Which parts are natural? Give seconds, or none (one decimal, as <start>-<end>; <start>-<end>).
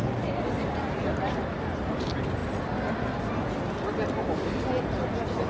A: 0.0-5.5